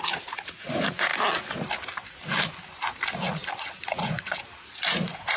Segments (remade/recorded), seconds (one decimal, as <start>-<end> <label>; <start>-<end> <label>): 0.0-1.1 remade; 1.1-3.5 recorded; 3.5-5.4 remade